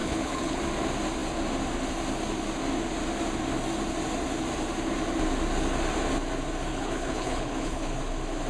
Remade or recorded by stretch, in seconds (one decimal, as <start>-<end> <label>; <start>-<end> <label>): 0.0-0.6 remade; 0.6-6.7 recorded; 6.7-8.0 remade; 8.0-8.5 recorded